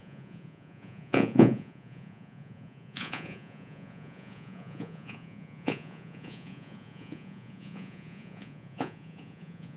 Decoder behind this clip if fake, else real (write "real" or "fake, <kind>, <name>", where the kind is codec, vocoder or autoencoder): fake, vocoder, Vocos